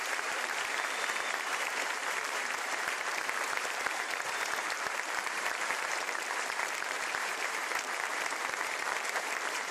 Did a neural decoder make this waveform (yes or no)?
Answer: yes